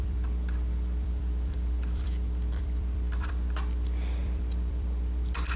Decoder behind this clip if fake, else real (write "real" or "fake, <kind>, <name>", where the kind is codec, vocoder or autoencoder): fake, vocoder, BigVGAN v2